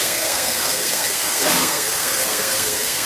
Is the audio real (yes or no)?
no